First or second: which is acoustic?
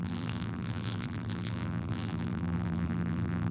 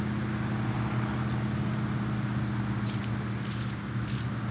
second